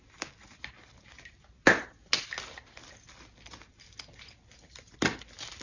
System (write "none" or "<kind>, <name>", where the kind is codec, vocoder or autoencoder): none